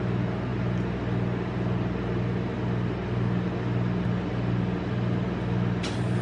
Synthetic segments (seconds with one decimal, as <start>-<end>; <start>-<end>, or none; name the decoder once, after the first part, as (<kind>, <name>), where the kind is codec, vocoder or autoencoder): none